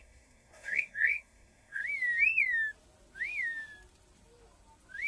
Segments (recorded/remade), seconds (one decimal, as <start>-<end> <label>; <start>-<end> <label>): 0.0-1.8 remade; 1.8-5.1 recorded